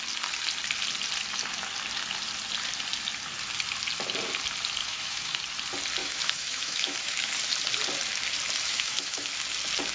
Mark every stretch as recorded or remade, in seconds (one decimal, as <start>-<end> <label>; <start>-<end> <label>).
0.0-4.8 recorded; 4.8-5.4 remade; 5.4-6.0 recorded; 6.0-7.3 remade; 7.3-8.6 recorded; 8.6-9.3 remade; 9.3-9.9 recorded

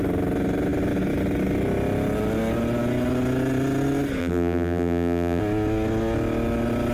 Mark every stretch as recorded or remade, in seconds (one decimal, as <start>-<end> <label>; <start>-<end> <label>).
0.0-4.2 recorded; 4.2-5.4 remade; 5.4-6.9 recorded

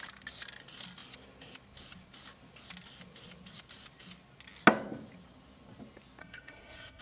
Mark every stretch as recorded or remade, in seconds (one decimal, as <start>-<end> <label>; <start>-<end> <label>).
0.0-6.2 recorded; 6.2-7.0 remade